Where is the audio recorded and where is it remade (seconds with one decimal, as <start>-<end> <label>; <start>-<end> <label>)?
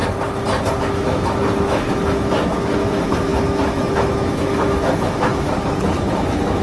0.0-0.8 recorded; 0.8-6.6 remade